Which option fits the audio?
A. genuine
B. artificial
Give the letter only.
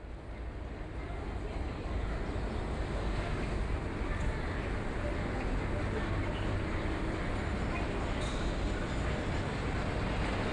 A